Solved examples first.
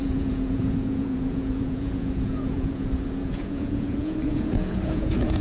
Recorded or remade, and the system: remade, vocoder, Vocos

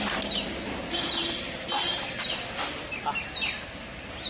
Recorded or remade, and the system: recorded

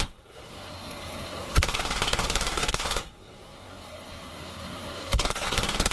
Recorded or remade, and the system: remade, codec, SNAC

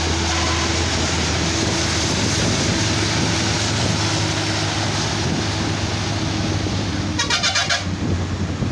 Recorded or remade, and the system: recorded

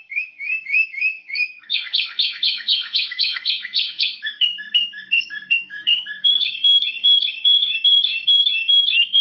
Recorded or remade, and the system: remade, codec, SNAC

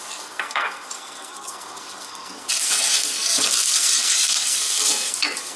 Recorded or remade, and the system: remade, codec, SNAC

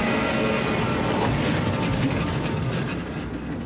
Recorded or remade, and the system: recorded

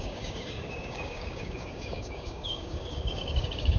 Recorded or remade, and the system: remade, codec, DAC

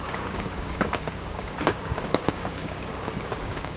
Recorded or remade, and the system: remade, codec, DAC